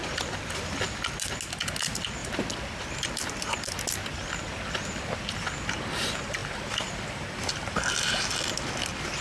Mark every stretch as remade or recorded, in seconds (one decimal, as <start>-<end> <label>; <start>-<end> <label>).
0.0-9.2 recorded